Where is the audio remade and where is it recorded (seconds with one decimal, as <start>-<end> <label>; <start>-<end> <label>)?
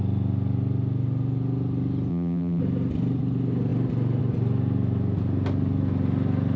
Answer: 0.0-2.1 recorded; 2.1-2.6 remade; 2.6-6.6 recorded